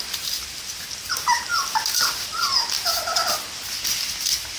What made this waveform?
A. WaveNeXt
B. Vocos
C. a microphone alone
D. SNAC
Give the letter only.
C